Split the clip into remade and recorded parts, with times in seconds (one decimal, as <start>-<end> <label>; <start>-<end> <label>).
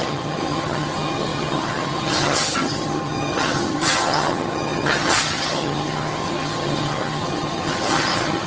0.0-8.5 remade